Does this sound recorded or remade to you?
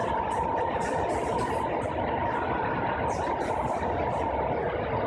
recorded